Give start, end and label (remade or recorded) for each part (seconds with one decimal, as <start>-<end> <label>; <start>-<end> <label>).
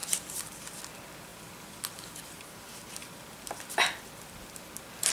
0.0-5.1 recorded